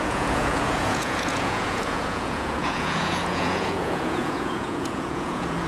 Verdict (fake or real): fake